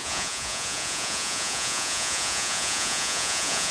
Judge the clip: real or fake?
fake